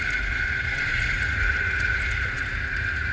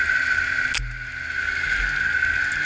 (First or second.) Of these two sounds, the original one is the second